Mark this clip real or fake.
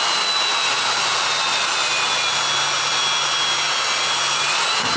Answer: real